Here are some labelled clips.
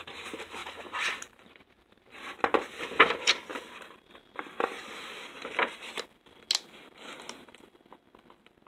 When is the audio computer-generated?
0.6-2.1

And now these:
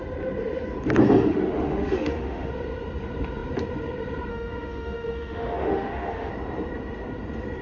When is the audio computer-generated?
1.3-2.5; 4.3-6.3